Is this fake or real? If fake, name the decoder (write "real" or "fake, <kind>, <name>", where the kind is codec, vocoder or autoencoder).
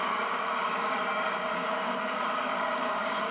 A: fake, codec, DAC